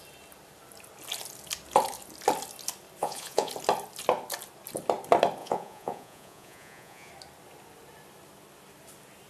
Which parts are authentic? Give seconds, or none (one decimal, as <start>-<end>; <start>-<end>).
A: 0.0-3.0; 3.5-5.4; 7.1-9.3